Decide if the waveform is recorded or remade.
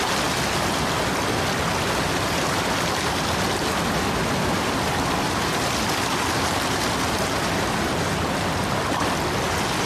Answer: recorded